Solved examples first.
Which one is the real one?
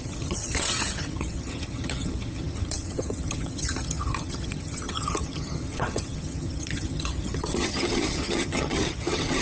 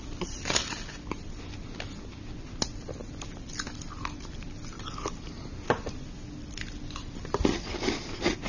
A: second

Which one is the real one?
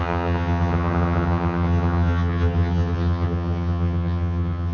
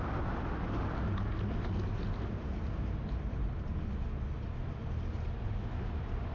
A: second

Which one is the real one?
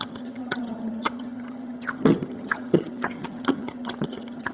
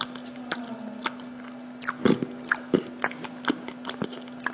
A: second